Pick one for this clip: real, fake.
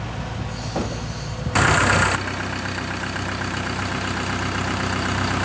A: real